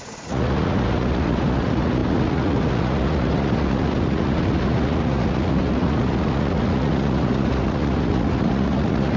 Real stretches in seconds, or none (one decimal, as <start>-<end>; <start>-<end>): none